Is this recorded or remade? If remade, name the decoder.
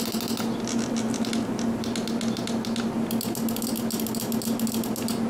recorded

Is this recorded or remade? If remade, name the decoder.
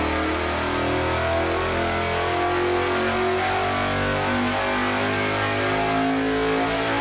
recorded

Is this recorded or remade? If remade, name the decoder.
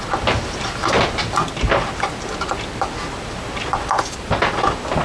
recorded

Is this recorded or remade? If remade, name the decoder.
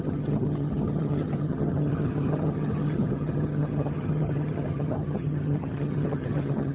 remade, vocoder, HiFi-GAN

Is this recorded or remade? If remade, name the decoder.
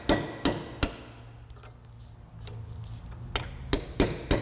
recorded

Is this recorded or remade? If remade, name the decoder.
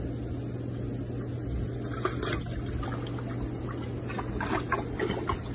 recorded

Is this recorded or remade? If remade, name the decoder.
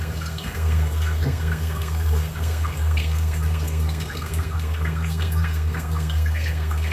remade, codec, SNAC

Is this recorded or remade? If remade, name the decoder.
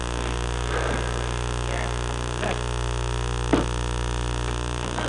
recorded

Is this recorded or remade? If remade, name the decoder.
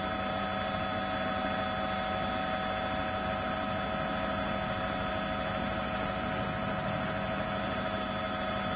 recorded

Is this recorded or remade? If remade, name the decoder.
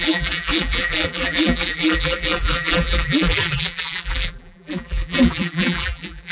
remade, vocoder, BigVGAN v2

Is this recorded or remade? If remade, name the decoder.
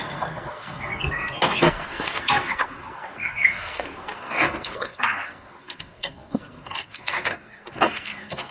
remade, codec, SNAC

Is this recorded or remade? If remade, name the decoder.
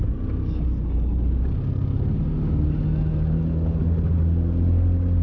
recorded